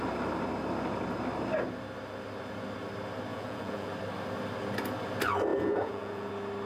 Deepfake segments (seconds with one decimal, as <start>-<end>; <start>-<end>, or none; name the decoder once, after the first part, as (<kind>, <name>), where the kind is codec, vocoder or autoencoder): 3.3-3.9 (vocoder, Vocos); 5.5-6.3